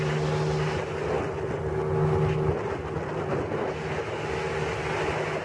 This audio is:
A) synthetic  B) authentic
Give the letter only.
B